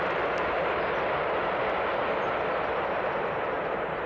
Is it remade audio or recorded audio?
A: recorded